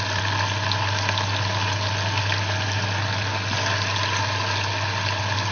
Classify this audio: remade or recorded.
recorded